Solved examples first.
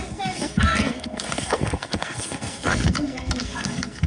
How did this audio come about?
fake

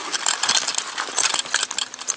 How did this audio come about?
real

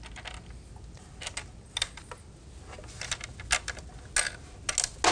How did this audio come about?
real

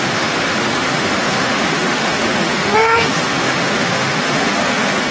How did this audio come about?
fake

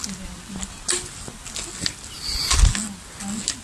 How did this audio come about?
real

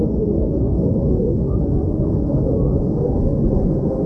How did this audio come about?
fake